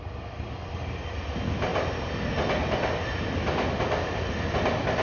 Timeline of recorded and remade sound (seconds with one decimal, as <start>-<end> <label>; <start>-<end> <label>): 0.0-5.0 recorded

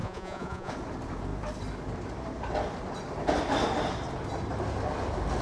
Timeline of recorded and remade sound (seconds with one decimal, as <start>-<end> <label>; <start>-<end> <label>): 0.0-0.7 remade; 0.7-5.4 recorded

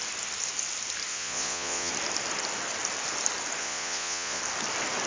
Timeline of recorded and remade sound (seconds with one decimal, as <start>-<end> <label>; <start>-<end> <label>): 0.0-1.1 recorded; 1.1-1.9 remade; 1.9-3.6 recorded; 3.6-4.4 remade; 4.4-5.1 recorded

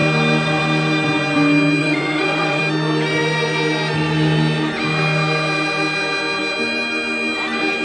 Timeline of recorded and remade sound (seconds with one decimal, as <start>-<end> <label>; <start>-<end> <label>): 0.0-1.8 recorded; 1.8-2.6 remade; 2.6-7.8 recorded

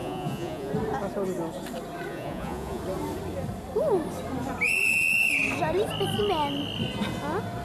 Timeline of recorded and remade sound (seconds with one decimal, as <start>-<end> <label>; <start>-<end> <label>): 0.0-0.7 remade; 0.7-2.1 recorded; 2.1-2.8 remade; 2.8-7.6 recorded

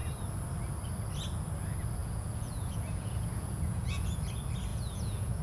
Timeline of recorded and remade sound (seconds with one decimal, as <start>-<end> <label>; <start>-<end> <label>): 0.0-2.0 recorded; 2.0-4.3 remade; 4.3-4.7 recorded; 4.7-5.4 remade

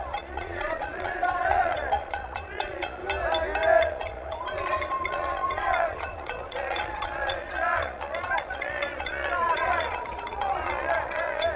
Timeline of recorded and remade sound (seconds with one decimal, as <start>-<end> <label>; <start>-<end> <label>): 0.0-3.0 remade; 3.0-3.8 recorded; 3.8-11.6 remade